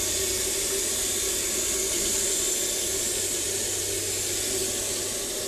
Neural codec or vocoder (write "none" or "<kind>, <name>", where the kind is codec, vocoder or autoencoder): none